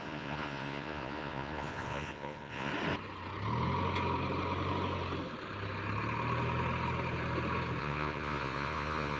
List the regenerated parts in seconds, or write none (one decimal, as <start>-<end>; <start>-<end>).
0.0-2.7; 7.8-9.2